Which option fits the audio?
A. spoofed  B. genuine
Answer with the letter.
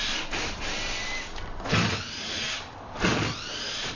B